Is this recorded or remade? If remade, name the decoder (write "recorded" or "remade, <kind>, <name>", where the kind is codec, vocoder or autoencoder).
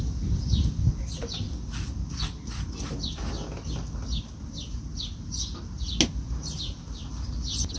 recorded